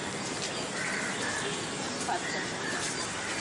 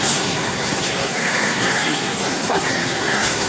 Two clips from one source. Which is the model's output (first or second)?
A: second